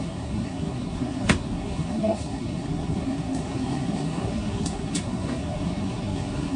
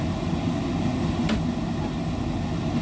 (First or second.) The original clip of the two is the second